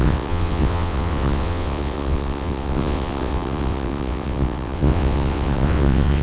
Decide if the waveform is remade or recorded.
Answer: remade